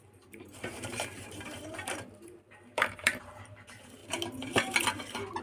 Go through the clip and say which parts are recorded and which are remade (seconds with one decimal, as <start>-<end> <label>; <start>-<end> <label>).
0.0-4.0 remade; 4.0-5.4 recorded